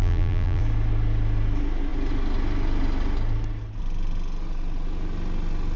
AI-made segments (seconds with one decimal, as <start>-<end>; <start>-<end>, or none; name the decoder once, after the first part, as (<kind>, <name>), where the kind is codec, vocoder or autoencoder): 0.0-0.6 (vocoder, BigVGAN v2)